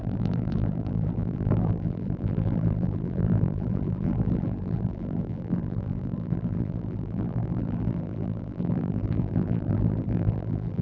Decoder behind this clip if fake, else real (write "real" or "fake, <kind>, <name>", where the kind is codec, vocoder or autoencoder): fake, vocoder, BigVGAN v2